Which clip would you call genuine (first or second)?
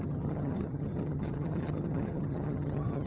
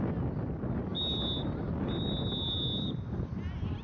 second